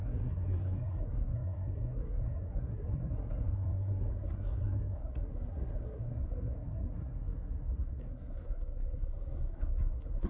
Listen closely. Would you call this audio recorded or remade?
remade